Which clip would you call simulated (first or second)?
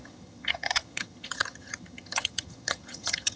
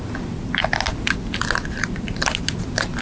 first